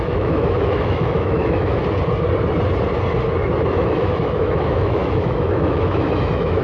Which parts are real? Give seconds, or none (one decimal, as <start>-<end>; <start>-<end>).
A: 1.8-3.7